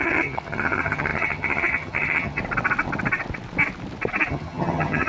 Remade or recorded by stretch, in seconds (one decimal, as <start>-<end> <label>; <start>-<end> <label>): 0.0-2.4 remade; 2.4-4.3 recorded; 4.3-5.1 remade